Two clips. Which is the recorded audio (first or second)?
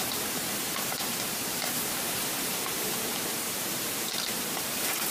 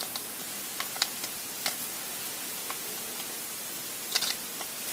second